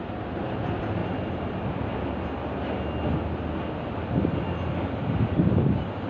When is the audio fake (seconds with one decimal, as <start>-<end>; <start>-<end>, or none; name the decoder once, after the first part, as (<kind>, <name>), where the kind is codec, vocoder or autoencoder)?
none